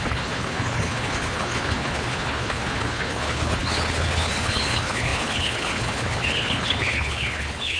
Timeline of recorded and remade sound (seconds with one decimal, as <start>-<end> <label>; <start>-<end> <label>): 0.0-7.8 remade